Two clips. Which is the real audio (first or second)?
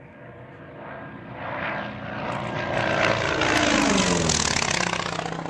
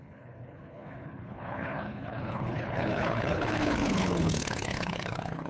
first